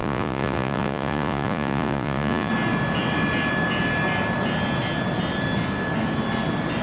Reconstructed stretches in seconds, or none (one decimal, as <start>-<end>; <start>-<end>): 0.0-2.5